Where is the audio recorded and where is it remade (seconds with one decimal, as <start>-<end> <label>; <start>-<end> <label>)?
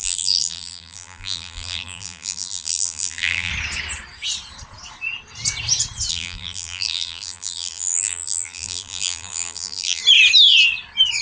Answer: 0.0-3.5 remade; 3.5-6.1 recorded; 6.1-10.0 remade; 10.0-11.2 recorded